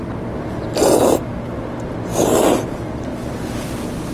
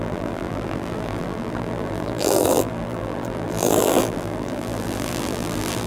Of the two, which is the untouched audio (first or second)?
first